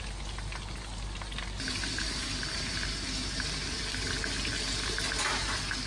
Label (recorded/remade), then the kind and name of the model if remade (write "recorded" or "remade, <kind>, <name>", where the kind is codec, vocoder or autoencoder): recorded